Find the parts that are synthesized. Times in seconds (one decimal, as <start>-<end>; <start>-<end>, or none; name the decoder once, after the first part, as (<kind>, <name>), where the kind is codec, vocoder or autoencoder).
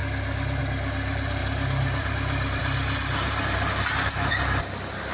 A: 1.4-4.3 (vocoder, BigVGAN v2)